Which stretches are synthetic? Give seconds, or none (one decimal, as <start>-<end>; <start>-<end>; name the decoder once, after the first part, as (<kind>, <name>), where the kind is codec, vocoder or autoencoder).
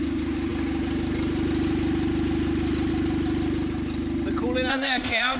4.7-5.4 (codec, ZipCodec)